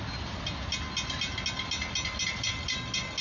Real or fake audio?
real